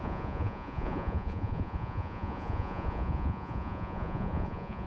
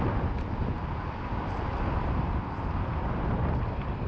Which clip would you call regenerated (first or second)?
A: first